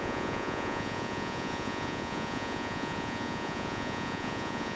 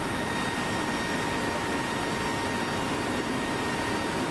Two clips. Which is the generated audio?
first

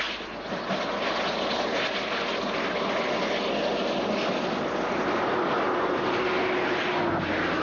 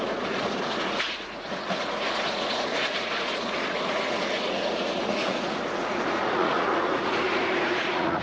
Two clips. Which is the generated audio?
second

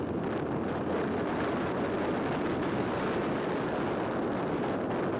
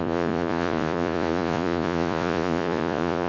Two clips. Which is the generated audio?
second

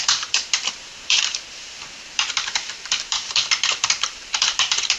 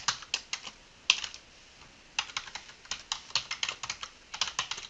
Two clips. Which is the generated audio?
first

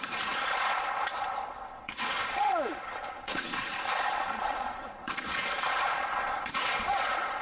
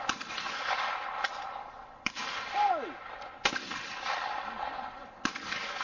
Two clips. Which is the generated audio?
first